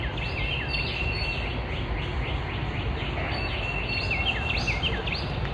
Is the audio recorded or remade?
recorded